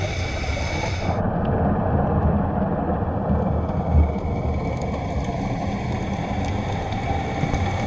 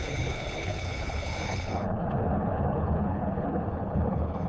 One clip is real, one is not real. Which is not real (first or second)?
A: second